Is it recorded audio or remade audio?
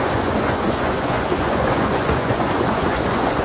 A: remade